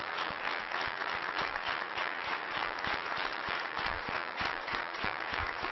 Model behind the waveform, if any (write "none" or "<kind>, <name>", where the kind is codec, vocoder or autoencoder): vocoder, Vocos